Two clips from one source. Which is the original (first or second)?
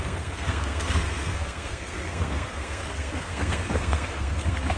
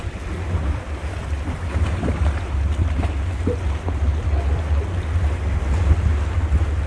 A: second